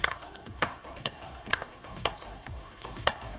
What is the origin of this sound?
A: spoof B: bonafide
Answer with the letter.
A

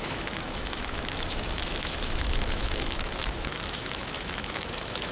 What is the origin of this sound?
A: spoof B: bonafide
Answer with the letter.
A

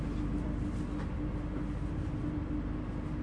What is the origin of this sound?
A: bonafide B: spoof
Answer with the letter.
A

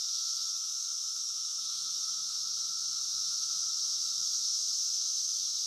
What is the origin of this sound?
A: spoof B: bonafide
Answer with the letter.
A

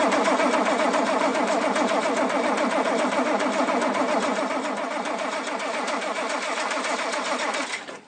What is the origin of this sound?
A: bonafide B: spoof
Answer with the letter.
B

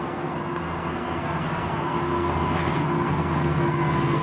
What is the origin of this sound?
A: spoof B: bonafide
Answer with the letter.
A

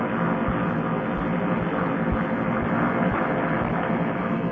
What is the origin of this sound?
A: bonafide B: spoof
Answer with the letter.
A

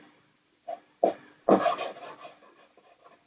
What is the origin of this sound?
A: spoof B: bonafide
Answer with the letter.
B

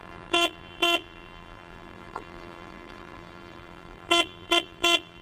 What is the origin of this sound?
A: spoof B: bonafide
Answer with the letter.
A